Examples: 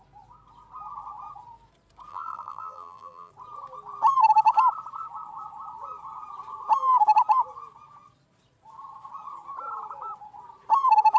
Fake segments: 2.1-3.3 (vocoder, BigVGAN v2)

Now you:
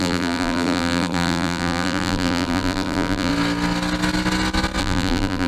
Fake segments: 0.0-3.3 (vocoder, BigVGAN v2); 4.8-5.5

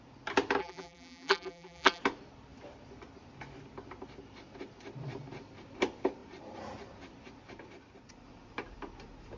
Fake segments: 0.6-2.0 (vocoder, BigVGAN v2)

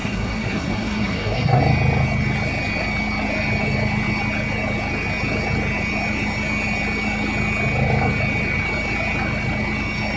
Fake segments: 0.0-1.6 (codec, SNAC)